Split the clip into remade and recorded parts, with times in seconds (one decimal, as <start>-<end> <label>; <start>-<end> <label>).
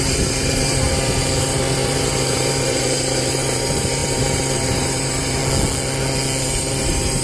0.0-5.4 remade; 5.4-6.4 recorded; 6.4-7.2 remade